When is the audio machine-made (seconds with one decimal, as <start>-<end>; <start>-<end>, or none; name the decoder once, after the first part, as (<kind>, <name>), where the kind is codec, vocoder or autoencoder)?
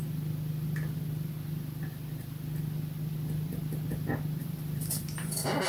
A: 4.4-5.7 (vocoder, BigVGAN v2)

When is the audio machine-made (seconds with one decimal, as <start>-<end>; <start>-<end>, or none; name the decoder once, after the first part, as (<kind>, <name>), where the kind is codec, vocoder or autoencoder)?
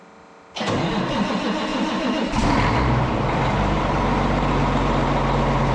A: 1.7-4.0 (vocoder, BigVGAN v2)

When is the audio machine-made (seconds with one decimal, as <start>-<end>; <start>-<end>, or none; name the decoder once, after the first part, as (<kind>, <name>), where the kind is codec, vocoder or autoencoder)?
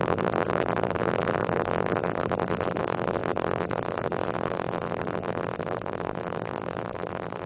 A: 0.0-7.5 (vocoder, BigVGAN v2)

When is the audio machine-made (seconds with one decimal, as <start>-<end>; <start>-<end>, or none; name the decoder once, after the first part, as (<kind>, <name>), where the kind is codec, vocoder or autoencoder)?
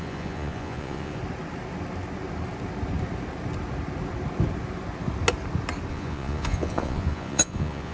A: 0.0-1.2 (vocoder, Vocos); 5.9-7.9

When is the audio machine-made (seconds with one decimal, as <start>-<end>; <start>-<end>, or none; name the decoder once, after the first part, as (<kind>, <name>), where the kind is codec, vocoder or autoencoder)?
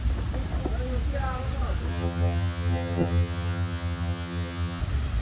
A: 1.9-4.8 (vocoder, HiFi-GAN)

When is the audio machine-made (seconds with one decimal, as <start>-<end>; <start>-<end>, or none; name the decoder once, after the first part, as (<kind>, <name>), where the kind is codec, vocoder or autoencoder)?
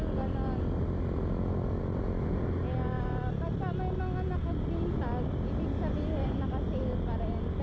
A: none